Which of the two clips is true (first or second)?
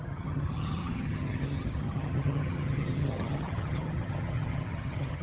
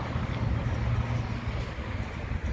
second